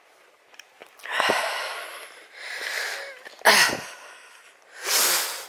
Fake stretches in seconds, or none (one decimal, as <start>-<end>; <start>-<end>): none